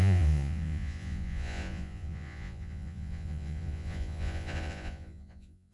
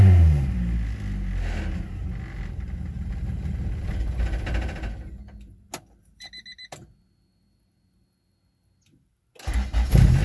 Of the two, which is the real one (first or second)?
second